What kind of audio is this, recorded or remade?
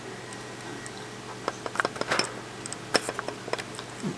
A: recorded